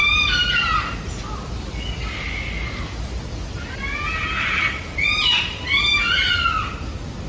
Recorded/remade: recorded